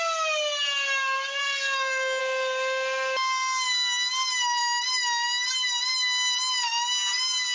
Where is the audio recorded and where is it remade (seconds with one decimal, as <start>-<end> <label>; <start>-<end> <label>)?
0.0-1.4 recorded; 1.4-2.2 remade; 2.2-7.5 recorded